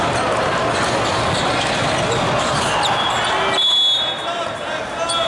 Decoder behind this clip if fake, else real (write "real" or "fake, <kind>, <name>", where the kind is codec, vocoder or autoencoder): real